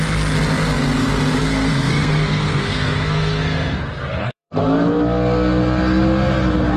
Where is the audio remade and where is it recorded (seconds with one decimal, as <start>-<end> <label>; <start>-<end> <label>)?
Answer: 0.0-1.4 recorded; 1.4-4.6 remade; 4.6-6.8 recorded